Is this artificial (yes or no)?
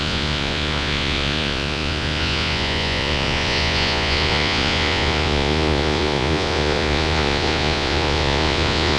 yes